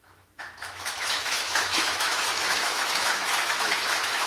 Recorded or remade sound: remade